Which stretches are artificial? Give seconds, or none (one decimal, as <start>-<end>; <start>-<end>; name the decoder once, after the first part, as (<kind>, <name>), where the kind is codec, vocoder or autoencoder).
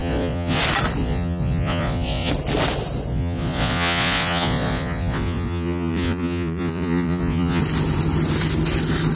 0.0-0.6 (vocoder, Vocos); 1.0-2.3; 3.1-7.6